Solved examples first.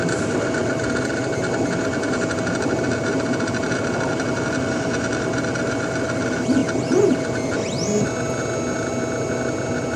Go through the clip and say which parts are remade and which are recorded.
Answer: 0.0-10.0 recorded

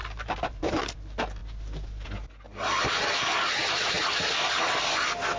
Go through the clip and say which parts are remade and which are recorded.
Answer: 0.0-0.8 remade; 0.8-5.4 recorded

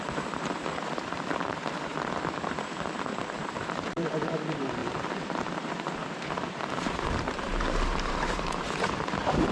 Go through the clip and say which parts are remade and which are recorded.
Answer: 0.0-9.5 remade